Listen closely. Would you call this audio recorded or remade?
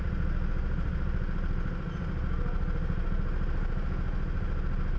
recorded